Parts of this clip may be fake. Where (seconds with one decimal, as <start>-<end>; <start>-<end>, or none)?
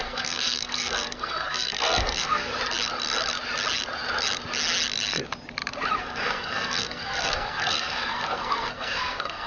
0.0-2.5; 6.0-9.5